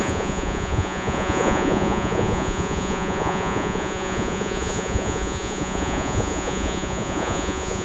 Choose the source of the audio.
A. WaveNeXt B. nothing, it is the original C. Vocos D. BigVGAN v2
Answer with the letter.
C